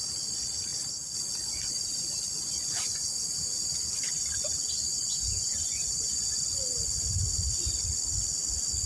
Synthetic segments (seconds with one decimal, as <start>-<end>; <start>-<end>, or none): 2.6-3.2; 4.9-6.4